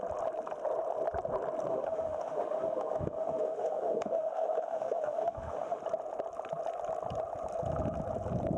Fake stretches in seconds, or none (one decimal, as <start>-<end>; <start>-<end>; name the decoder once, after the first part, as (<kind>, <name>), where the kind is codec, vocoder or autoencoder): 1.7-5.8 (autoencoder, DAC-VAE)